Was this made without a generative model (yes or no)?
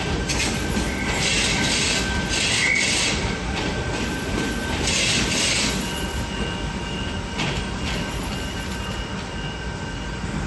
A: yes